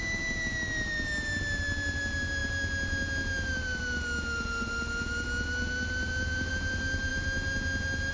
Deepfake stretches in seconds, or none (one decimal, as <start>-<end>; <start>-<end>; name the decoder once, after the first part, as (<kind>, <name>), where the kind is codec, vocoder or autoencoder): none